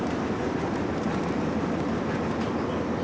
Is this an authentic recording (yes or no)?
yes